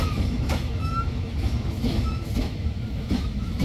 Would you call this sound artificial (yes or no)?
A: yes